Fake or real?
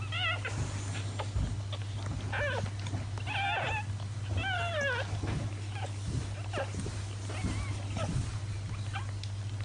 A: real